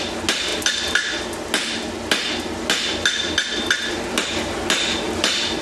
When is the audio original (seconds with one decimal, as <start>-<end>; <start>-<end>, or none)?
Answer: 0.0-5.6